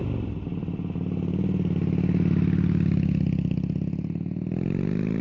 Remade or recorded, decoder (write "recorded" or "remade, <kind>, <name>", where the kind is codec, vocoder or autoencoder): recorded